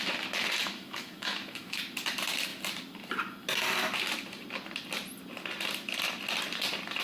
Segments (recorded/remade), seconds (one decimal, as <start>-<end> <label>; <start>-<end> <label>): 0.0-0.6 recorded; 0.6-1.8 remade; 1.8-7.0 recorded